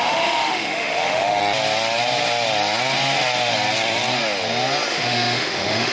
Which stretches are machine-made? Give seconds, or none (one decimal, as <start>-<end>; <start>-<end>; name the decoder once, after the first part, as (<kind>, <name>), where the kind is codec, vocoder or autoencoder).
0.0-1.4 (autoencoder, DAC-VAE); 4.9-5.9